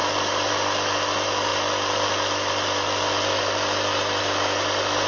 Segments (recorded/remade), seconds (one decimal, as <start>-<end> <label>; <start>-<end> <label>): 0.0-5.1 recorded